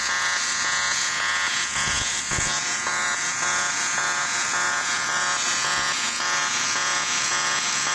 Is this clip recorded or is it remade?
remade